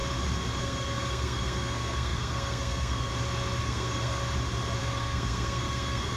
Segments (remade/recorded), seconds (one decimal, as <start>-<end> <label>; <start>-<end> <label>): 0.0-0.6 recorded; 0.6-3.1 remade; 3.1-3.6 recorded; 3.6-4.2 remade; 4.2-4.8 recorded; 4.8-6.2 remade